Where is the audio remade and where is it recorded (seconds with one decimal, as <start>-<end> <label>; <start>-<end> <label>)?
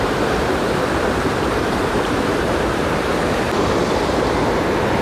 0.0-0.5 recorded; 0.5-3.5 remade; 3.5-5.0 recorded